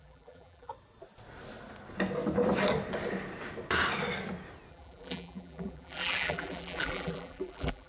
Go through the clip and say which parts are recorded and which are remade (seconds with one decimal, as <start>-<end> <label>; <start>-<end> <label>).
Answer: 0.0-0.7 remade; 0.7-4.7 recorded; 4.7-7.9 remade